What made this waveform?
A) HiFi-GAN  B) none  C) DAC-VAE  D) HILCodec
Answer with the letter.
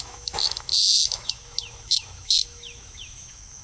C